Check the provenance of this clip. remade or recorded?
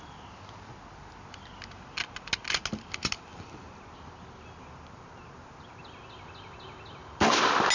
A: recorded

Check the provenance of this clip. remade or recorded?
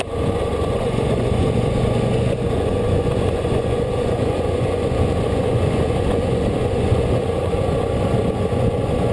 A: remade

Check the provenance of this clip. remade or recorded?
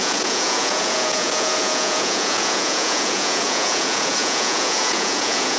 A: remade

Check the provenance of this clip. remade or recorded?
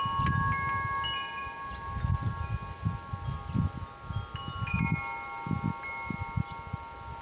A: recorded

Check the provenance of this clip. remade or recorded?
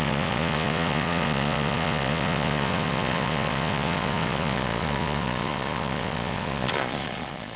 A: remade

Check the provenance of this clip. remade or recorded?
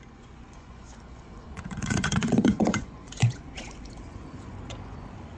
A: remade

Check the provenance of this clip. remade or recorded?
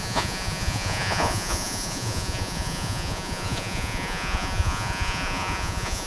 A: remade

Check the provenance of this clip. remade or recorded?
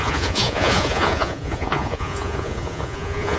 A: remade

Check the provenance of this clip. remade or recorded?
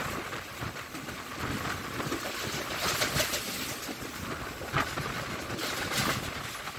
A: recorded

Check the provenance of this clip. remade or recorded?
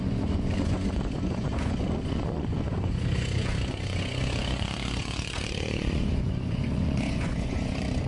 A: remade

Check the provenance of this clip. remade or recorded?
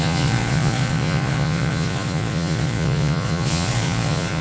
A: remade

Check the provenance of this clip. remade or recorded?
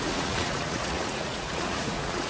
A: remade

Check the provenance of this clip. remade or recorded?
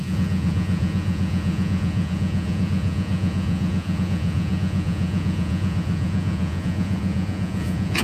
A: remade